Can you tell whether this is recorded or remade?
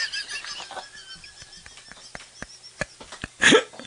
recorded